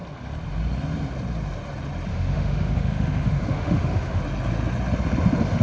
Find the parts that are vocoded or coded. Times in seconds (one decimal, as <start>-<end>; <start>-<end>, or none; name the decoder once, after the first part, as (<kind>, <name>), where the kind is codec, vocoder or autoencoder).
2.1-4.2 (autoencoder, DAC-VAE)